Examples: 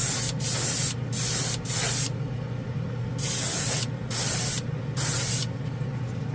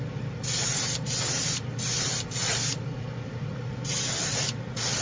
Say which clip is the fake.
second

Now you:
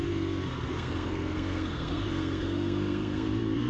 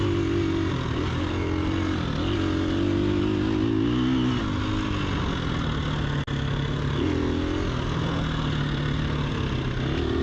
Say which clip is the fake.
first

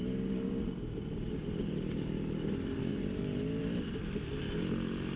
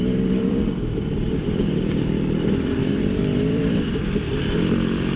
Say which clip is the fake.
second